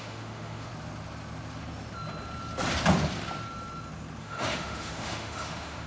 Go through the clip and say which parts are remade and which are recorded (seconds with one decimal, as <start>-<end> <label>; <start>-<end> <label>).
0.0-0.7 remade; 0.7-4.2 recorded; 4.2-5.9 remade